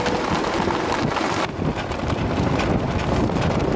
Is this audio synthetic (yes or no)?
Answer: no